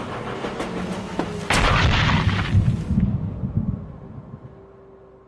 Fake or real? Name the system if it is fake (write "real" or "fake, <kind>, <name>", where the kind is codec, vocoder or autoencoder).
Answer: real